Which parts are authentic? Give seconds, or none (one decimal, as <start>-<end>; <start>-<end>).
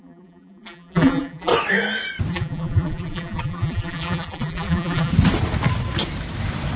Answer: 1.5-2.3; 5.1-6.8